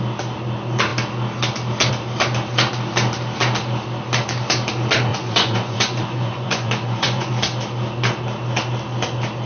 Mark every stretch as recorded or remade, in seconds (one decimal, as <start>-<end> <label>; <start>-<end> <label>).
0.0-5.1 recorded; 5.1-7.3 remade; 7.3-9.5 recorded